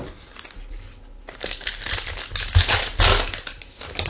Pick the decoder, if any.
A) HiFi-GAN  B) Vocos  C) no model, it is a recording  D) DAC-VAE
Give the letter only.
C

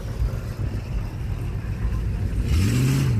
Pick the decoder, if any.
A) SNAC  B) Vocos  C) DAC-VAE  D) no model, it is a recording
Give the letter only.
D